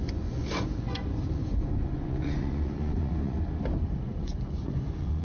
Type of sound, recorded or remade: remade